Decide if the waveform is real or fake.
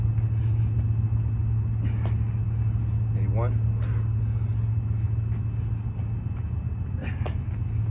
real